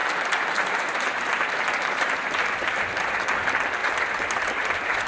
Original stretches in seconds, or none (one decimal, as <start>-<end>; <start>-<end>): 3.1-3.8